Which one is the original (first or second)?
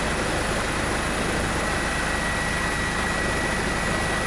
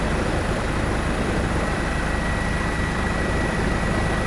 first